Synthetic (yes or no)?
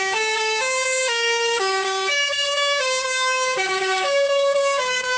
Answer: yes